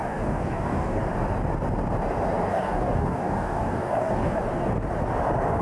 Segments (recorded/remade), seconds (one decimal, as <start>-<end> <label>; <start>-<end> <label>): 0.0-1.0 remade; 1.0-2.5 recorded; 2.5-4.4 remade; 4.4-5.6 recorded